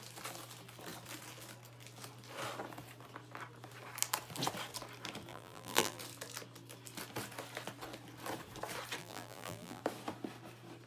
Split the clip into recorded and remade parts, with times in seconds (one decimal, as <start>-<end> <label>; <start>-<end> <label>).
0.0-5.3 recorded; 5.3-6.0 remade; 6.0-9.0 recorded; 9.0-9.8 remade; 9.8-10.9 recorded